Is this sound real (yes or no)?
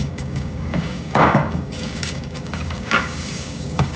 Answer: no